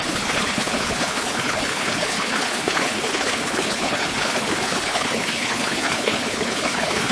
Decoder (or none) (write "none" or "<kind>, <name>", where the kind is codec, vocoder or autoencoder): codec, HILCodec